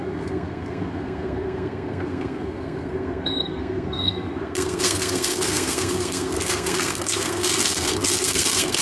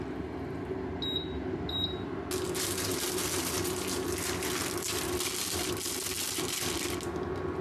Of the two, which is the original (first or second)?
second